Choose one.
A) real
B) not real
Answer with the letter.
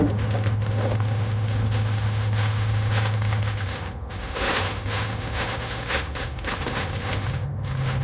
B